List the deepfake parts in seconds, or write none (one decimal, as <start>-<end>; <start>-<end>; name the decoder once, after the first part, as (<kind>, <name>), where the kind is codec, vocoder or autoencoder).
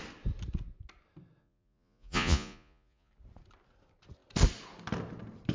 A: 1.4-3.1 (vocoder, Vocos)